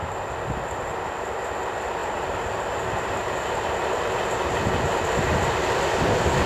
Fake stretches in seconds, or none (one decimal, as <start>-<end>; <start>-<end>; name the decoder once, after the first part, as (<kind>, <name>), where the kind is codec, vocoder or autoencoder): none